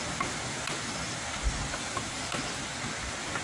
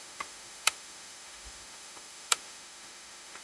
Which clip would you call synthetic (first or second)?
second